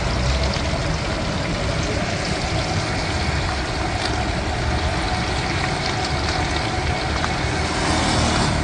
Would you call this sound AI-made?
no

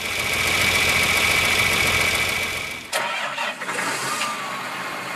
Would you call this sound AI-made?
no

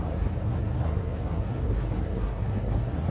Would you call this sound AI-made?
yes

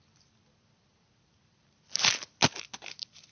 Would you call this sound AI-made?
yes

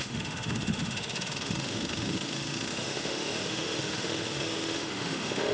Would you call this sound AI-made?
yes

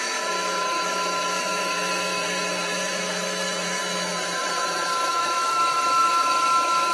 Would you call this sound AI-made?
yes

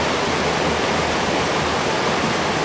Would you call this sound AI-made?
no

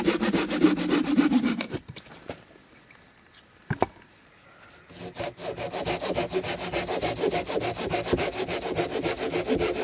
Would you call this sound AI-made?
no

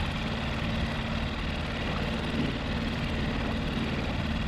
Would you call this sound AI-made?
no